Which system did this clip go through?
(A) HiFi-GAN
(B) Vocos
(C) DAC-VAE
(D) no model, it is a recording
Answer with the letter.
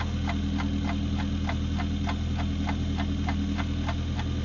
D